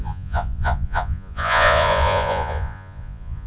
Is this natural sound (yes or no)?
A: no